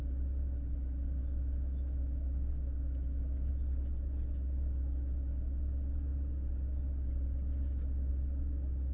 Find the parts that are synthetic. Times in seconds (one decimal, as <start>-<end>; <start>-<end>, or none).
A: 1.2-3.5